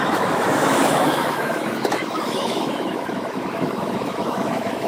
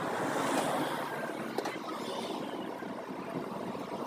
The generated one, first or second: first